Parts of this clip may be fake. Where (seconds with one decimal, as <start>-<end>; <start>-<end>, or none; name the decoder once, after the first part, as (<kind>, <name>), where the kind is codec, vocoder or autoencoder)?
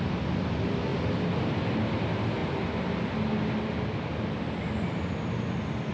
none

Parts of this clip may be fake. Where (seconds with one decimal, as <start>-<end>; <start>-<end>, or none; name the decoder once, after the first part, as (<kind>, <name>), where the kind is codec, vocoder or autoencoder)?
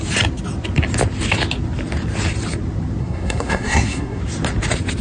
3.0-4.2 (codec, SNAC)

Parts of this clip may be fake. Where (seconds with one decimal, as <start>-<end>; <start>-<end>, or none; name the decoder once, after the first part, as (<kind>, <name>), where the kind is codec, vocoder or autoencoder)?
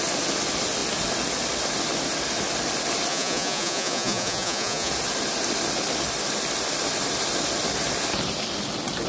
3.1-4.9 (vocoder, Vocos)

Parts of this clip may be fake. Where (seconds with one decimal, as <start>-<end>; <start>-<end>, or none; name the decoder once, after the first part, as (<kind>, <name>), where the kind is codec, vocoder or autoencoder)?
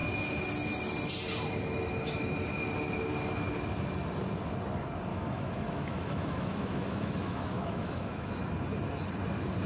5.1-8.3 (autoencoder, DAC-VAE)